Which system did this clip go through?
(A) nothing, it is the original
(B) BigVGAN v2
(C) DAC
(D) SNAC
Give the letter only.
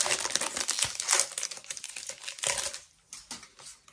A